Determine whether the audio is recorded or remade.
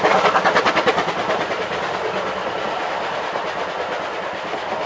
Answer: recorded